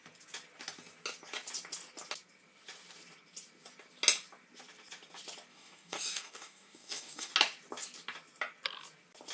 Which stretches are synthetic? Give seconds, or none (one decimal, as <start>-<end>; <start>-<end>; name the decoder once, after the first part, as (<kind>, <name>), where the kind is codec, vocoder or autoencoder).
5.5-7.3 (codec, DAC)